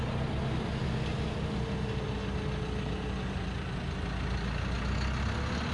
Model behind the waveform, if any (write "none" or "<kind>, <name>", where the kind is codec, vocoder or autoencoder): none